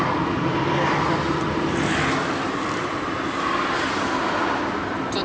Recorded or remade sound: recorded